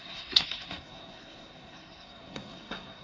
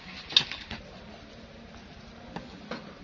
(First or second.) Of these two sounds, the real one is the second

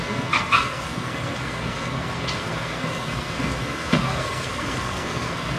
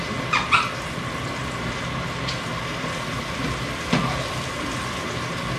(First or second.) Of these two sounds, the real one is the second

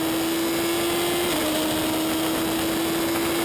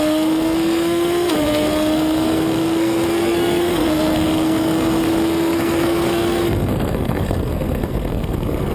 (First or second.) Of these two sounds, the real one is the first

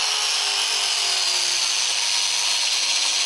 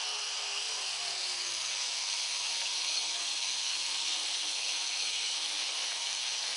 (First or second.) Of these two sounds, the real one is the first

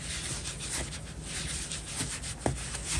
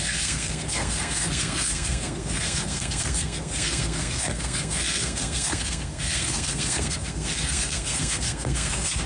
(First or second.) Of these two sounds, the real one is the first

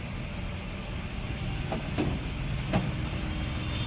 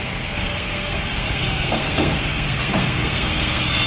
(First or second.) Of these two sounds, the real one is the first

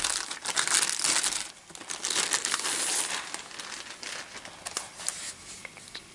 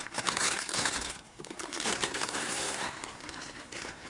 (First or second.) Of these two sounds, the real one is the first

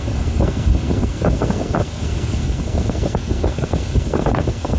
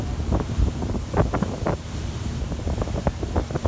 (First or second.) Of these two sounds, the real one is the second